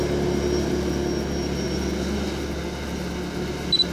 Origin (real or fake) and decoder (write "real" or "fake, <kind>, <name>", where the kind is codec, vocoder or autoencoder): real